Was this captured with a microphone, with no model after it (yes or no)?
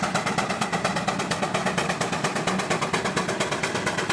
no